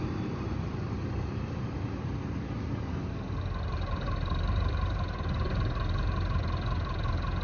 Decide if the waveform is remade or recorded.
remade